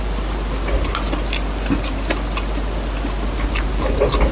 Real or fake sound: real